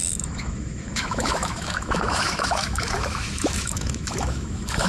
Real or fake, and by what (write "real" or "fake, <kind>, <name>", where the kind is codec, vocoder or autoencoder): fake, autoencoder, DAC-VAE